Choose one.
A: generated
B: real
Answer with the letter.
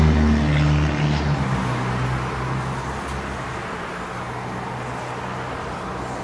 B